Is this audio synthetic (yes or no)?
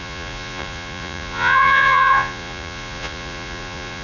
yes